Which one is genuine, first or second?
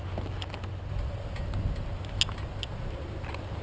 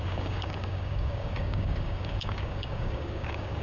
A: first